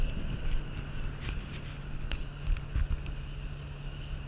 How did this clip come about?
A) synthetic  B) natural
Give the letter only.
B